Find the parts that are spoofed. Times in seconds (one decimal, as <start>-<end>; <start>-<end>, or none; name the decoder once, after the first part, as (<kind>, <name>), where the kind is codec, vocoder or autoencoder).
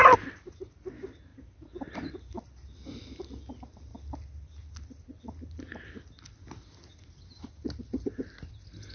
none